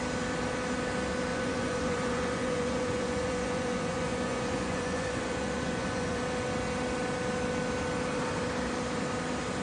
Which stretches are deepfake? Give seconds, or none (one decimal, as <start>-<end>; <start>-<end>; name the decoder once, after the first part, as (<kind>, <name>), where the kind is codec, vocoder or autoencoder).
1.3-6.2 (vocoder, Vocos)